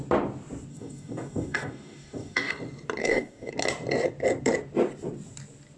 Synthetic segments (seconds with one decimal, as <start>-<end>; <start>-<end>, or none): 0.7-2.5; 3.0-3.5